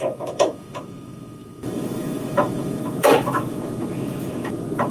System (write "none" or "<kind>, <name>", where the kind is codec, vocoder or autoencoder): autoencoder, DAC-VAE